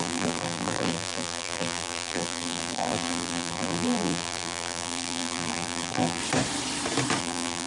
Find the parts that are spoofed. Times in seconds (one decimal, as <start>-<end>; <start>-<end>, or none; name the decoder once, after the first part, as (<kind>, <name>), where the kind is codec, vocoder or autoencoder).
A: 0.0-6.2 (vocoder, BigVGAN v2); 7.2-7.7